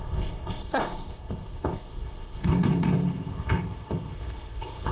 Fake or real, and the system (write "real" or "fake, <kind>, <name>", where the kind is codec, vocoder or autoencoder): fake, codec, ZipCodec